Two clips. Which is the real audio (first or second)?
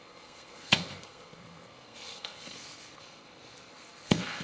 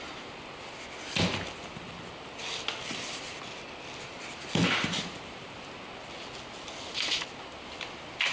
second